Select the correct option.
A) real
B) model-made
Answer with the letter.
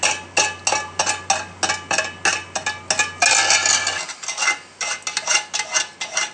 A